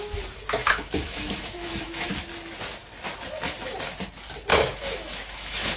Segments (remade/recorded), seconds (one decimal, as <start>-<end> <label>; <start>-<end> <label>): 0.0-0.6 recorded; 0.6-2.1 remade; 2.1-4.5 recorded; 4.5-5.8 remade